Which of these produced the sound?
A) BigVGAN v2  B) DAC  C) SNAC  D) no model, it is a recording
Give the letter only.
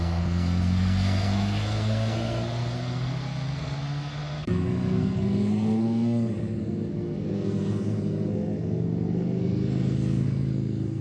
C